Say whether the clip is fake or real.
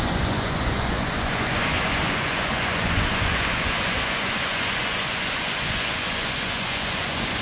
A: fake